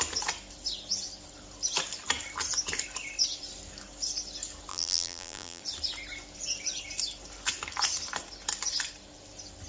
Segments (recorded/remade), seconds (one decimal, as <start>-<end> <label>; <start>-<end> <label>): 0.0-4.7 recorded; 4.7-5.6 remade; 5.6-9.7 recorded